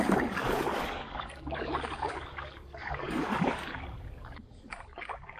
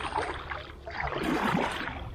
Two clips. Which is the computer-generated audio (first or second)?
first